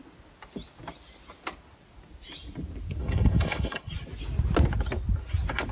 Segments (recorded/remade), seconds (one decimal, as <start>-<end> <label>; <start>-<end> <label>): 0.0-3.0 recorded; 3.0-3.9 remade; 3.9-5.7 recorded